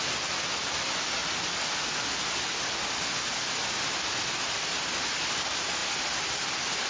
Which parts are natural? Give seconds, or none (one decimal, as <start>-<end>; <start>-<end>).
0.0-6.9

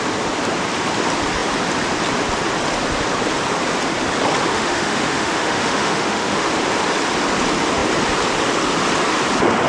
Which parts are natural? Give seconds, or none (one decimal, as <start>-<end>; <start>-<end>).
0.0-4.5; 6.5-9.7

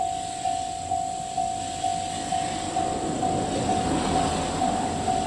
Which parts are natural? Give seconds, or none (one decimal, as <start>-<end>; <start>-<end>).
0.0-5.3

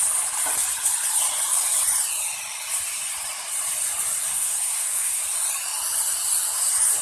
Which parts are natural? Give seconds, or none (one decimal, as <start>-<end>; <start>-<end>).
0.0-4.3; 5.2-7.0

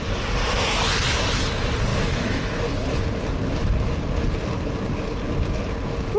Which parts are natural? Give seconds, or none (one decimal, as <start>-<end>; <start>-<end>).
0.0-1.9; 2.6-6.2